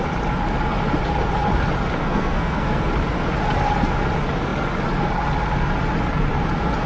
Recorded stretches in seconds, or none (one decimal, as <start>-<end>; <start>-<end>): 0.0-2.0; 2.9-6.9